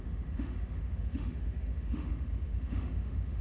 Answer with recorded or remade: remade